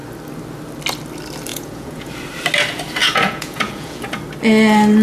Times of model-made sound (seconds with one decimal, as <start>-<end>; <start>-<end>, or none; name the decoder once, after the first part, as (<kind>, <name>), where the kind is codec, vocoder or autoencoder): 1.5-2.1 (vocoder, Vocos); 3.0-4.2